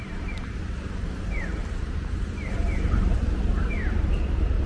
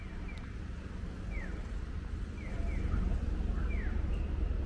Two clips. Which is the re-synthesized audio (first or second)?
first